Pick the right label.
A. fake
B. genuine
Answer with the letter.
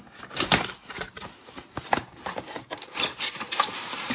A